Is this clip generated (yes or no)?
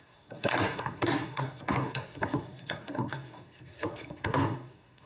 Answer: yes